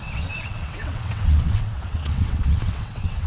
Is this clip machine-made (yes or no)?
yes